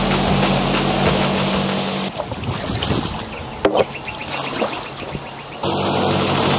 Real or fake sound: real